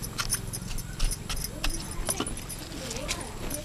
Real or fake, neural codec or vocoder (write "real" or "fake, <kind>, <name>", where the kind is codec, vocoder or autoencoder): real